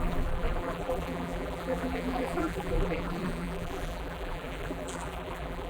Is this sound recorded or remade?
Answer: remade